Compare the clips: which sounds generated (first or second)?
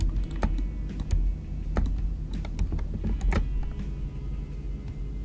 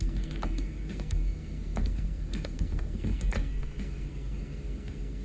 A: second